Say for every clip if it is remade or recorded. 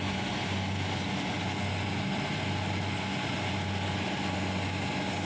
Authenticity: recorded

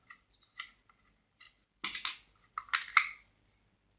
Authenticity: recorded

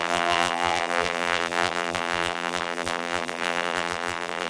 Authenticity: remade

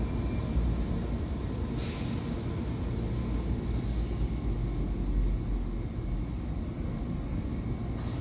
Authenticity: recorded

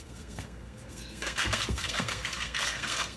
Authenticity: remade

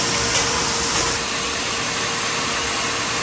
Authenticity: recorded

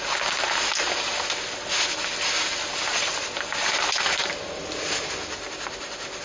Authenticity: recorded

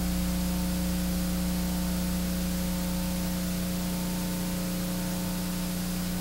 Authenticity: recorded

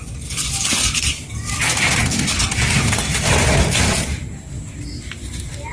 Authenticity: recorded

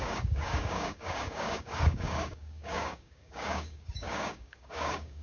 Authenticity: remade